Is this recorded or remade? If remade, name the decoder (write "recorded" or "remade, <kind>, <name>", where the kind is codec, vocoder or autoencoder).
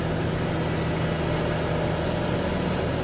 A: recorded